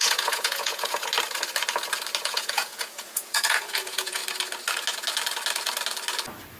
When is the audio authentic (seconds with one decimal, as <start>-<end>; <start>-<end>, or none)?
1.1-2.2; 4.2-6.6